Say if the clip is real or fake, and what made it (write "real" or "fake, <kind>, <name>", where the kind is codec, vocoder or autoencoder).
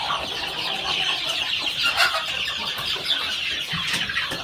fake, vocoder, BigVGAN v2